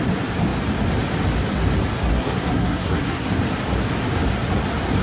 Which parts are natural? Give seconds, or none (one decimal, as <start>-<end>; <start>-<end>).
0.0-2.1; 3.3-5.0